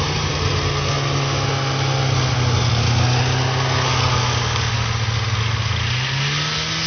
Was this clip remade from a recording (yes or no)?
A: no